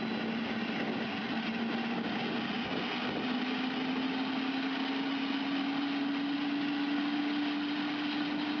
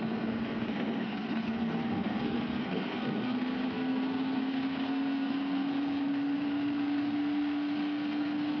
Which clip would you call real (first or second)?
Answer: first